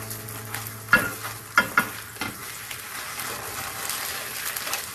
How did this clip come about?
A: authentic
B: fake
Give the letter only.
A